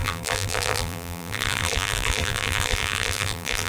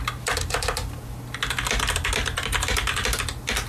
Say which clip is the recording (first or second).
second